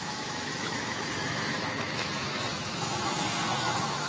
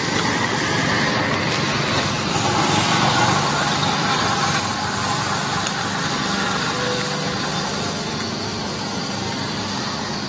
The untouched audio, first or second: second